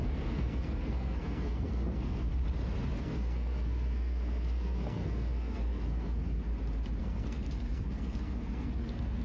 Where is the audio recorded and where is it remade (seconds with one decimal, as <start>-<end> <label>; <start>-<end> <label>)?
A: 0.0-2.3 remade; 2.3-3.0 recorded; 3.0-6.5 remade; 6.5-7.0 recorded; 7.0-9.2 remade